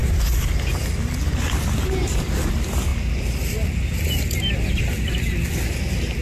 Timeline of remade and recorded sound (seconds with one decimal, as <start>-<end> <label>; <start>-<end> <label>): 0.0-6.2 recorded